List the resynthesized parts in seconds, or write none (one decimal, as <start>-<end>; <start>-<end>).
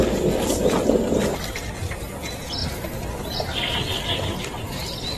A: none